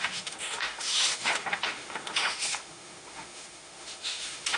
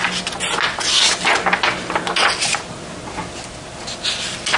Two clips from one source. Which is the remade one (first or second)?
first